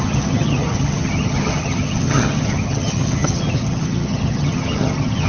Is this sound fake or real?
fake